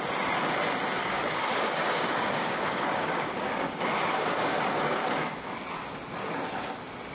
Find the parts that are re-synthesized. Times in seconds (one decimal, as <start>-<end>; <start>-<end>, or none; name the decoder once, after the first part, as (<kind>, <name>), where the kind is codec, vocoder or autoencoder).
1.0-5.3 (codec, DAC)